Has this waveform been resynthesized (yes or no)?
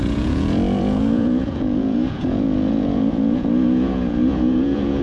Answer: yes